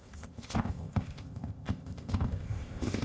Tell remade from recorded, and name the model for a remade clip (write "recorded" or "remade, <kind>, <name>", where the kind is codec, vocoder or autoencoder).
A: remade, codec, ZipCodec